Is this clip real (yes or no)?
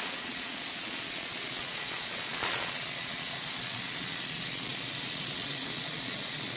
no